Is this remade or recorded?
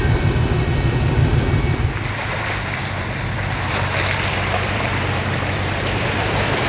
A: remade